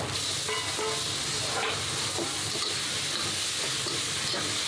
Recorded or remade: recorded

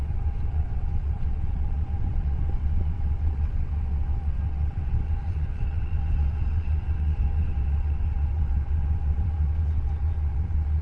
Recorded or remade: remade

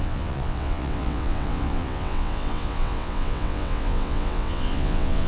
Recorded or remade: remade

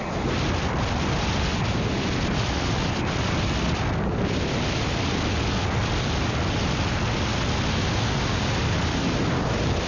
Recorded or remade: recorded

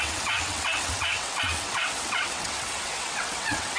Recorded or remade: remade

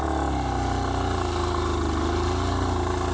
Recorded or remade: recorded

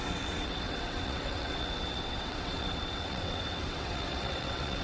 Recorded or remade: remade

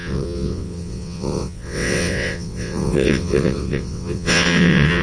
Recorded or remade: remade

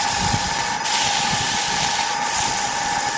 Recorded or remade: recorded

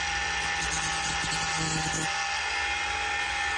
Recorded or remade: recorded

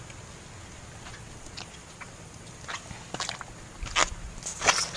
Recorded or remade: recorded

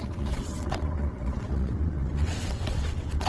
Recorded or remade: remade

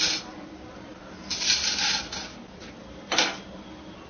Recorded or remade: recorded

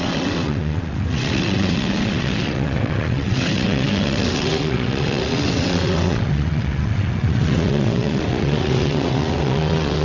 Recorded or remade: remade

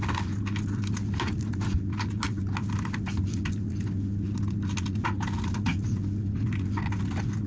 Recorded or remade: recorded